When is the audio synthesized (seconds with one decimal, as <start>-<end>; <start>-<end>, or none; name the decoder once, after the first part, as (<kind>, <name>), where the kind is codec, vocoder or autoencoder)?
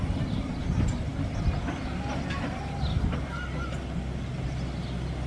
none